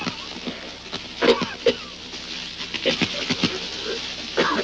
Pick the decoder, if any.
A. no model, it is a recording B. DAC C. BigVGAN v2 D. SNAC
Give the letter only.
A